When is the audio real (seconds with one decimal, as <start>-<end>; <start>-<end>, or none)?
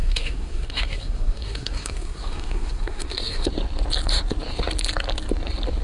3.5-5.8